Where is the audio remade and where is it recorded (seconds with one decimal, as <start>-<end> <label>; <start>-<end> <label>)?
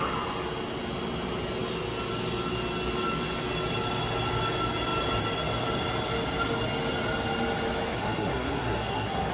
0.0-7.9 recorded; 7.9-9.3 remade